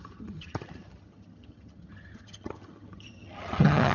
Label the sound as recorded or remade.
remade